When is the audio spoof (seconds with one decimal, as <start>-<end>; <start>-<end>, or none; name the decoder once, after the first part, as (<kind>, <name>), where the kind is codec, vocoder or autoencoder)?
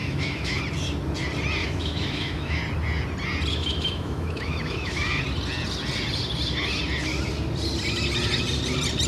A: 0.0-0.6 (autoencoder, DAC-VAE); 1.6-2.6; 3.5-5.2